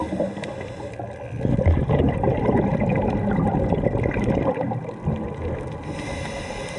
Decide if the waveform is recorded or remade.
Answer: recorded